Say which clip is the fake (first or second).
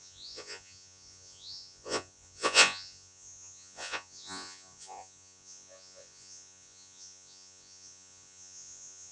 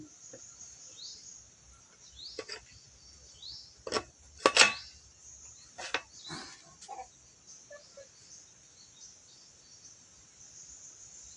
first